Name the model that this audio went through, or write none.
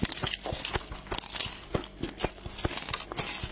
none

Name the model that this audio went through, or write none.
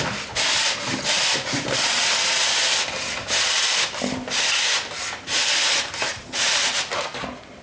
none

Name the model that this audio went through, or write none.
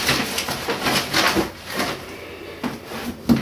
none